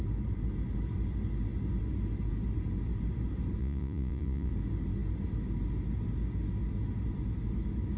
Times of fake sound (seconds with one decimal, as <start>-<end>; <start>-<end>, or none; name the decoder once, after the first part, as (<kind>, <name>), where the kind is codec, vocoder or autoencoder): 3.6-4.5 (vocoder, Vocos)